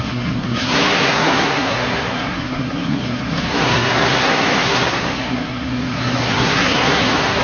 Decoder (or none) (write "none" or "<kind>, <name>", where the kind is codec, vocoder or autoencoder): codec, SNAC